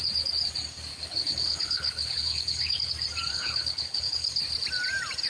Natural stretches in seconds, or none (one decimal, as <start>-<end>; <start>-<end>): 0.0-0.9; 2.9-3.3; 4.4-5.3